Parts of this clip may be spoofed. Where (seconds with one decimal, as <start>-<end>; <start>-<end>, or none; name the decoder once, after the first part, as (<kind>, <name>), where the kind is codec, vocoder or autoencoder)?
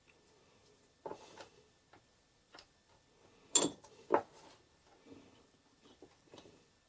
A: none